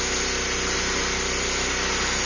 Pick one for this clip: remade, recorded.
recorded